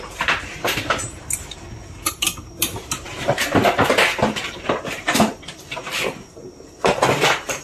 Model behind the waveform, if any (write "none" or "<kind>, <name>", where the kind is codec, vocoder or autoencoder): vocoder, BigVGAN v2